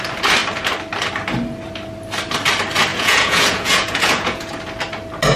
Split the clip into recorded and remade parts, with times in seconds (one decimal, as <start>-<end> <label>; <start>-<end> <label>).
0.0-2.9 recorded; 2.9-4.5 remade; 4.5-5.4 recorded